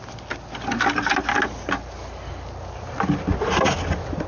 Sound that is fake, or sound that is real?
real